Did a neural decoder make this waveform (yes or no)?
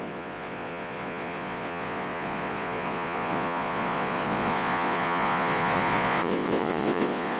yes